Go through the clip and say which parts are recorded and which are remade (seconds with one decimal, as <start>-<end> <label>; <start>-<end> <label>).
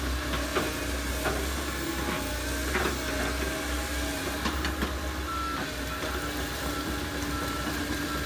0.0-8.3 recorded